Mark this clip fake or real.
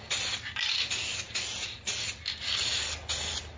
real